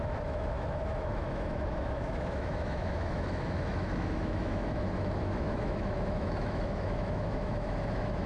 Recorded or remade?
remade